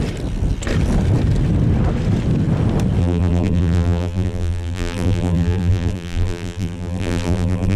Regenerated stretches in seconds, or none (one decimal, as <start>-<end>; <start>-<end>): 3.0-7.8